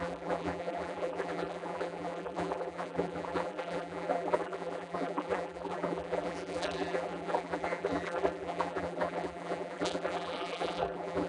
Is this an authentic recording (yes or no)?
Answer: no